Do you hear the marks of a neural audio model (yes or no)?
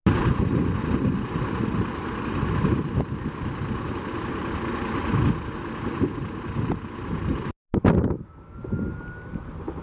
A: no